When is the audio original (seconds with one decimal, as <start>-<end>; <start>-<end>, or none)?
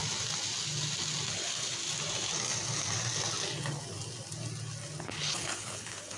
0.0-1.3; 1.8-5.0